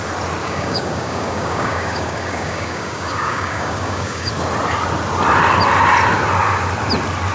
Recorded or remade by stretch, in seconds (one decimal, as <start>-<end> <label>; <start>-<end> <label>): 0.0-0.4 recorded; 0.4-4.3 remade; 4.3-7.3 recorded